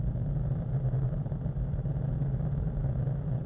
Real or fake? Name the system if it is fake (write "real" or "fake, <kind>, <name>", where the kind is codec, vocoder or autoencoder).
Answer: fake, vocoder, BigVGAN v2